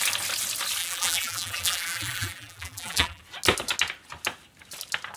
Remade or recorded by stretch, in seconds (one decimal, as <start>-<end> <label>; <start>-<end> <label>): 0.0-0.8 recorded; 0.8-3.2 remade; 3.2-5.2 recorded